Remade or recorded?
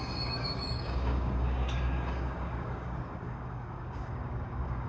remade